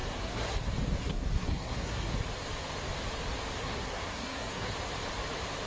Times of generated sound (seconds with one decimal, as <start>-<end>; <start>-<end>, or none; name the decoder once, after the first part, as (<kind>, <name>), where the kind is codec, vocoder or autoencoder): 0.0-0.6 (codec, SNAC); 1.0-2.1; 3.6-4.7